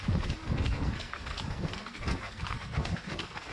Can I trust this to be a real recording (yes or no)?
no